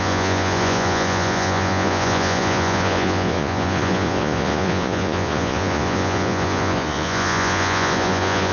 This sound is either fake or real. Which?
fake